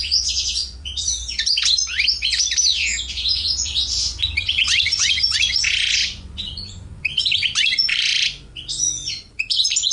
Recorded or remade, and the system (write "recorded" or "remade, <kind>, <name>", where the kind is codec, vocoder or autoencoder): remade, vocoder, Vocos